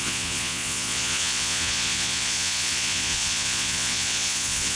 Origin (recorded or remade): remade